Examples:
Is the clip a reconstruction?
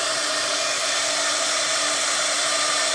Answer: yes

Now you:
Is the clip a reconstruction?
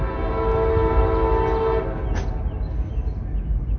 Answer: no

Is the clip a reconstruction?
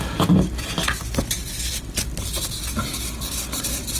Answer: no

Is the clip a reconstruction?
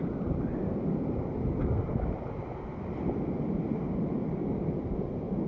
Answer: no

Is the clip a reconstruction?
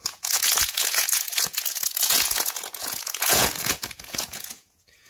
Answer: yes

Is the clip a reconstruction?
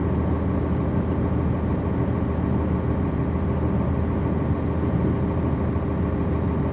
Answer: no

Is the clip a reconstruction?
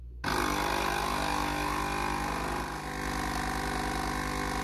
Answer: no